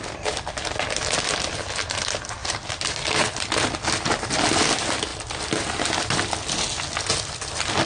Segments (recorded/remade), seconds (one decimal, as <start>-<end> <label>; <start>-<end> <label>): 0.0-7.9 recorded